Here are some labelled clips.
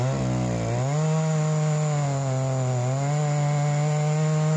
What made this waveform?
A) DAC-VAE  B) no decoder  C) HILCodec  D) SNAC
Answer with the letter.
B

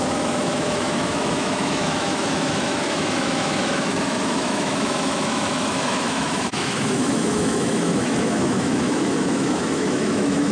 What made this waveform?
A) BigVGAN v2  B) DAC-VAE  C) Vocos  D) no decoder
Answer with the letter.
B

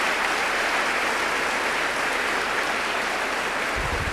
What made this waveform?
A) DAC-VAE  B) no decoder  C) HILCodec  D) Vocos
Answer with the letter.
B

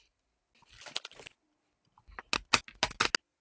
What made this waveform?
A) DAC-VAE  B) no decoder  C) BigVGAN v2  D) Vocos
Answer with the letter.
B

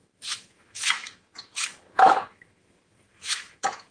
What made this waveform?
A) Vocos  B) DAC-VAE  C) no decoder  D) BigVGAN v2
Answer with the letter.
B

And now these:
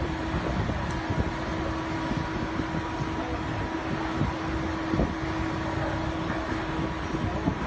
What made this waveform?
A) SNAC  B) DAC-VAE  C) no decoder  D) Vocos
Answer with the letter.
C